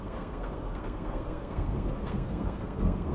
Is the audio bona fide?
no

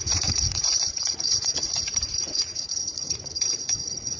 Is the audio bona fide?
no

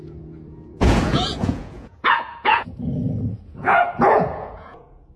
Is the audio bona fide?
no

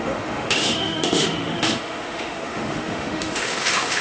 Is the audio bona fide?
no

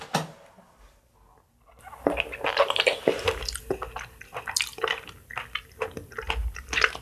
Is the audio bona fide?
yes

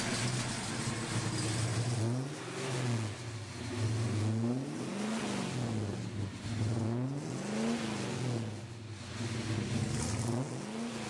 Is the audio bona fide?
yes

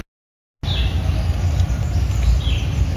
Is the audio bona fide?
yes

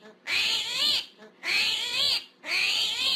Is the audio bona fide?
yes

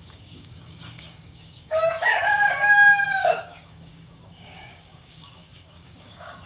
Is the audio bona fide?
no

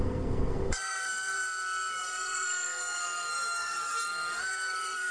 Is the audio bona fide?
no